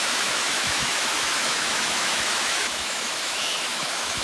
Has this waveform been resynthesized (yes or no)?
yes